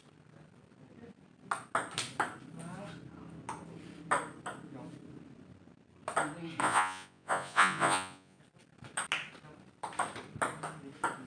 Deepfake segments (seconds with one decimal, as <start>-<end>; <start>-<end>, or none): 6.6-8.4